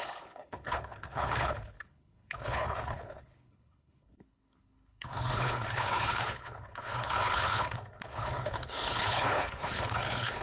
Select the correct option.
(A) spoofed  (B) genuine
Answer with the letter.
A